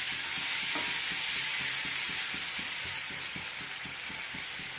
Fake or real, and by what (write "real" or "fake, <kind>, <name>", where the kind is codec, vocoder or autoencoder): real